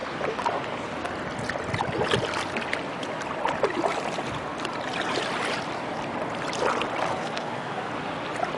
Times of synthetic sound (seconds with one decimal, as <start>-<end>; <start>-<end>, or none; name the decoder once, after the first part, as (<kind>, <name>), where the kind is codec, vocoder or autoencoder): 7.1-7.9 (codec, SNAC)